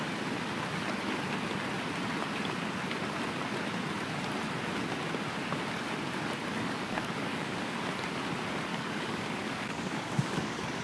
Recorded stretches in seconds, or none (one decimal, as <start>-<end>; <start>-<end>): 0.0-6.5; 7.9-8.7